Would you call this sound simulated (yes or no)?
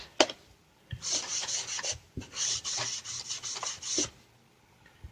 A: no